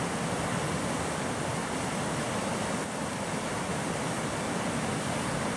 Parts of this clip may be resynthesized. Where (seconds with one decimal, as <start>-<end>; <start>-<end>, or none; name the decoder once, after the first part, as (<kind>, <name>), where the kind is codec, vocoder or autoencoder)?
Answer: 1.5-2.0 (vocoder, BigVGAN v2)